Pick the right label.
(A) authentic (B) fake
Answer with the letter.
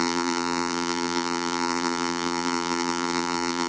B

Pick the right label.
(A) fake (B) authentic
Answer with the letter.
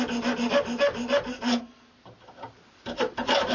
B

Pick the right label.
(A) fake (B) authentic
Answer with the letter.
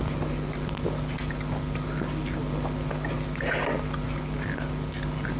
B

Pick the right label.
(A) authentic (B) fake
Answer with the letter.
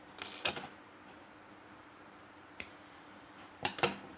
B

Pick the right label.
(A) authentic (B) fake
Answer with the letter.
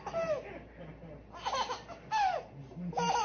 A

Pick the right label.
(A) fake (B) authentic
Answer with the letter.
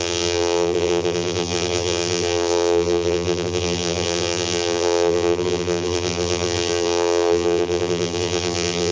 A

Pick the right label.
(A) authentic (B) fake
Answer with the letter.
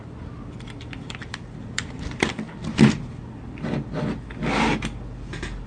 B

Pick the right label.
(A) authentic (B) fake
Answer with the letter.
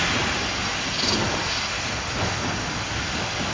A